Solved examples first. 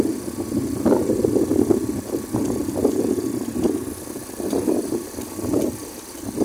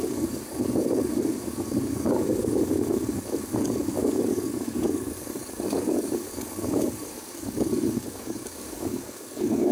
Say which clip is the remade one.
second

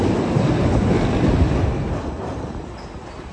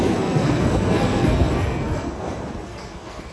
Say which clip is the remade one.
second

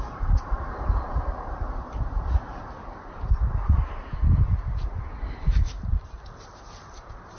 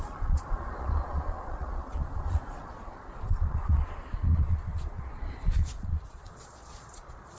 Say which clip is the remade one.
second